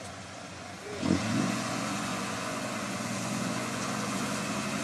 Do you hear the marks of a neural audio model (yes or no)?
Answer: yes